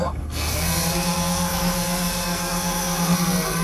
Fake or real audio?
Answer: fake